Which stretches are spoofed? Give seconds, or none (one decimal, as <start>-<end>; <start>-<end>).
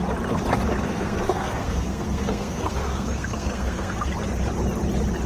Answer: 0.9-4.0